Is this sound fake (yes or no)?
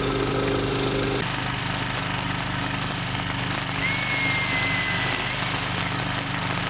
no